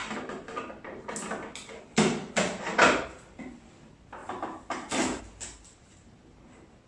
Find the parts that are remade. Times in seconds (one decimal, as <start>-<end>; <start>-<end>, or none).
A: 0.0-0.8; 4.2-5.2